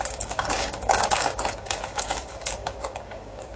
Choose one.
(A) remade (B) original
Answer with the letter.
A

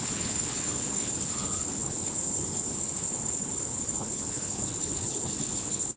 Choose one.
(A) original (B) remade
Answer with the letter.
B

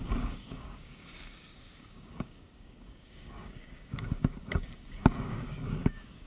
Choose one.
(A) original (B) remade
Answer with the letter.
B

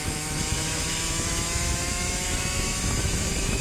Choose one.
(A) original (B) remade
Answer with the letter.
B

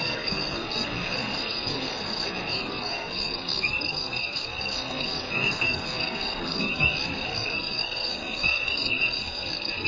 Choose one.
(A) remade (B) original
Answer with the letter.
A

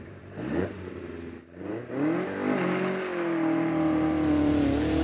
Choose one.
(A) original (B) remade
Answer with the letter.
A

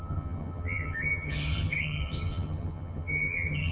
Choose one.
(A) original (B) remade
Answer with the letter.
B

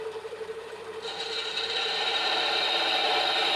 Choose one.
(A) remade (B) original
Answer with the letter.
A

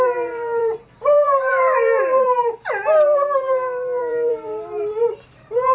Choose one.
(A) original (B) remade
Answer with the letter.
B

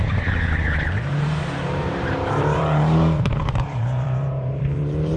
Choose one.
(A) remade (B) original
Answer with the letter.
A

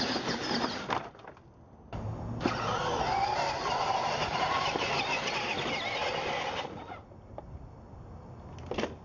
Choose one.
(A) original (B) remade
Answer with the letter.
A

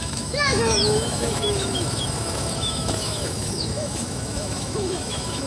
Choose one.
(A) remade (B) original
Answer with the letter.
A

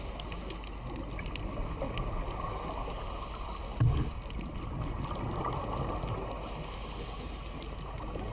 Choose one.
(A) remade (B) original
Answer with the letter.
B